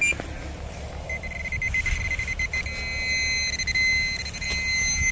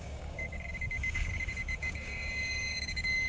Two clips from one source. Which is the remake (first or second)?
second